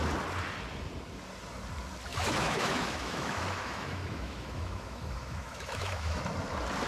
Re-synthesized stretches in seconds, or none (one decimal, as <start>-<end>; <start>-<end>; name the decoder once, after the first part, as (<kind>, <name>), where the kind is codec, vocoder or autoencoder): 2.1-6.2 (autoencoder, DAC-VAE)